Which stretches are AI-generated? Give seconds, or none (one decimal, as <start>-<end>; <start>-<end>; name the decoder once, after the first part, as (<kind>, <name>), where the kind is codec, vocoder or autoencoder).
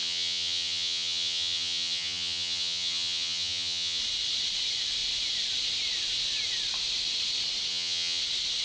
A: 0.0-4.0 (vocoder, HiFi-GAN); 7.7-8.2